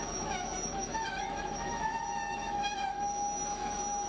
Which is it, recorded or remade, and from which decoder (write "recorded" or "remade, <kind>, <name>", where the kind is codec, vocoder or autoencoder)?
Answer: remade, autoencoder, DAC-VAE